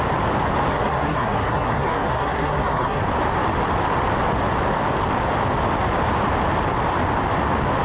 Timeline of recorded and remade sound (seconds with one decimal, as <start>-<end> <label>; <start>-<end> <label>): 0.0-0.7 recorded; 0.7-3.0 remade; 3.0-7.8 recorded